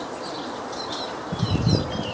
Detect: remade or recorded recorded